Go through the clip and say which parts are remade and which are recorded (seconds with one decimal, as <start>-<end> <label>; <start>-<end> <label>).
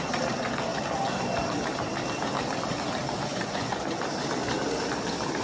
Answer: 0.0-3.3 recorded; 3.3-3.8 remade; 3.8-5.4 recorded